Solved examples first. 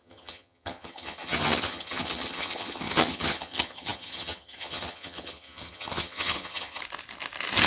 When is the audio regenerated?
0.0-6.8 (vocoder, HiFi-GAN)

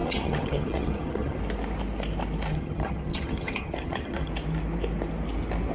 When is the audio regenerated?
0.0-1.4 (vocoder, HiFi-GAN); 2.5-4.3